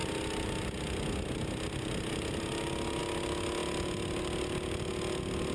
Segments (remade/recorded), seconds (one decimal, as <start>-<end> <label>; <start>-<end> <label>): 0.0-5.5 recorded